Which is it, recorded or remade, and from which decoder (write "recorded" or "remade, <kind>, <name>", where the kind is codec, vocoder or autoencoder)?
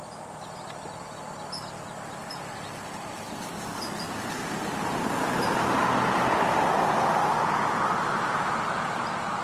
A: recorded